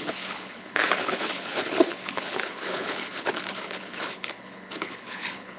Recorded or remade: remade